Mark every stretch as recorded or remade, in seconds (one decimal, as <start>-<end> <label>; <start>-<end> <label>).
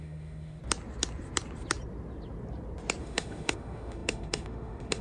0.0-0.6 remade; 0.6-3.0 recorded; 3.0-5.0 remade